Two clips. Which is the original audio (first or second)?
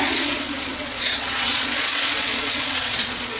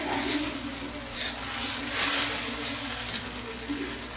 second